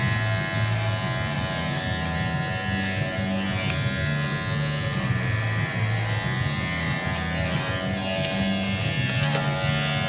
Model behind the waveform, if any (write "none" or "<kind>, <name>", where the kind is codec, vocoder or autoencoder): none